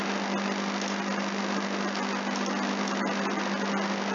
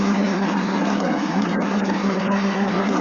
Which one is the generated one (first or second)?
second